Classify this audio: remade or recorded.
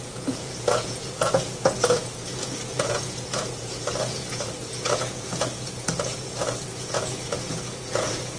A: remade